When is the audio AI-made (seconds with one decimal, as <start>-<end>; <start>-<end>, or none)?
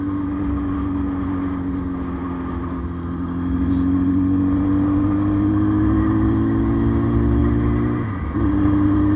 none